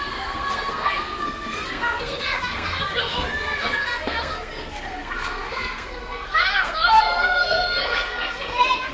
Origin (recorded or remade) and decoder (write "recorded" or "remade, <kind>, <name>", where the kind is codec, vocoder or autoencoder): remade, codec, SNAC